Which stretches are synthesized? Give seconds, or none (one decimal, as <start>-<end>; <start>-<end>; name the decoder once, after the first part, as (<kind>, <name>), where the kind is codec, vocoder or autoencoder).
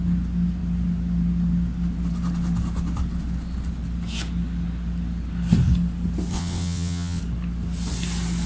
6.3-7.2 (vocoder, WaveNeXt)